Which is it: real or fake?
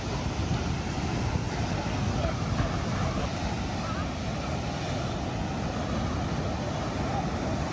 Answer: real